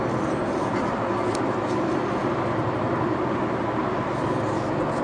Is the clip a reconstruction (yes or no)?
no